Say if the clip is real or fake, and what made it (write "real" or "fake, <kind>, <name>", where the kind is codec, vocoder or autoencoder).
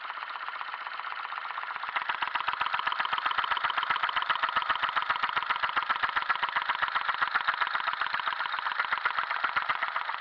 real